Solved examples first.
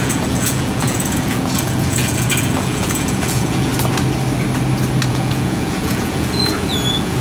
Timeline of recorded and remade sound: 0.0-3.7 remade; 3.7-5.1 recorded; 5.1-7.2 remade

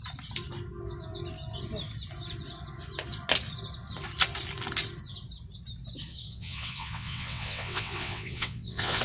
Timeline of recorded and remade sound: 0.0-6.1 recorded; 6.1-9.0 remade

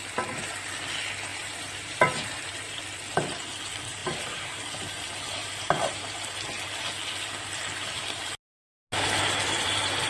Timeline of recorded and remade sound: 0.0-1.3 recorded; 1.3-2.8 remade; 2.8-4.0 recorded; 4.0-4.6 remade; 4.6-5.4 recorded; 5.4-6.3 remade; 6.3-10.1 recorded

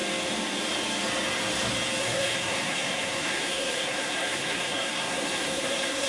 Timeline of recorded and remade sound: 0.0-2.0 recorded; 2.0-6.1 remade

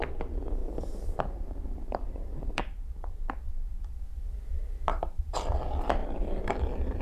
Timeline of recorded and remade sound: 0.0-0.6 recorded; 0.6-4.0 remade; 4.0-4.9 recorded; 4.9-5.5 remade; 5.5-6.0 recorded; 6.0-6.6 remade; 6.6-7.0 recorded